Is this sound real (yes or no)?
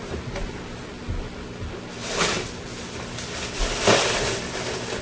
yes